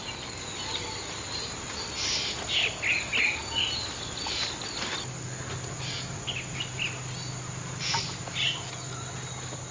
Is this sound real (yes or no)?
yes